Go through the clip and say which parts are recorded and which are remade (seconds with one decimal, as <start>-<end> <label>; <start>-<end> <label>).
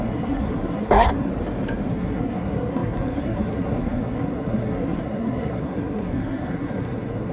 0.0-1.3 remade; 1.3-1.9 recorded; 1.9-7.3 remade